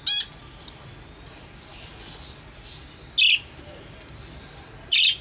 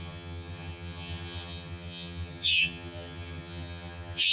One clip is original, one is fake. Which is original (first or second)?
first